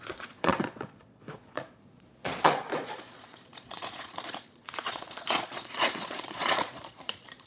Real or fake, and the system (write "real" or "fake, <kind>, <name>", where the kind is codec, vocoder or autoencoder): fake, vocoder, Vocos